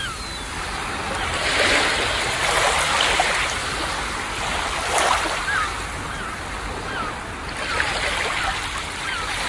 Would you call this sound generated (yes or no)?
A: no